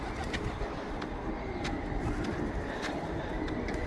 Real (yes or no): yes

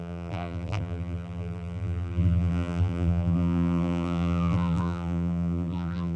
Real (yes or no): no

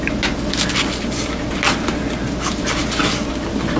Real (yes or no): yes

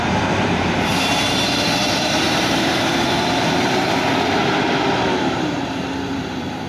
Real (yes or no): no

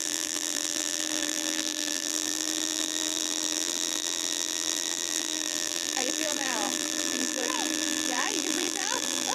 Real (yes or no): no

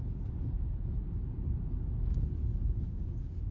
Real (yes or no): yes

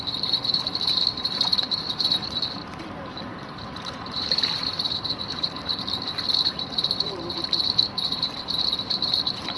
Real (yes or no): no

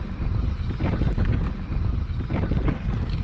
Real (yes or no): no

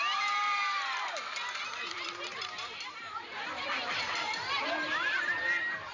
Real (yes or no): no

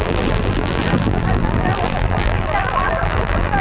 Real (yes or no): no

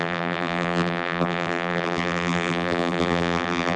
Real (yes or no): no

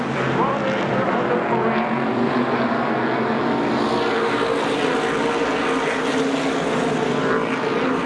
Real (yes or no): yes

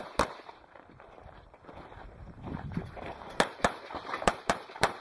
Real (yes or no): no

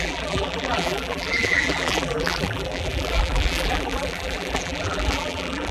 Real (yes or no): no